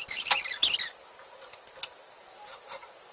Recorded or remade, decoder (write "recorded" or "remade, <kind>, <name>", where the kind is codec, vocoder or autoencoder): recorded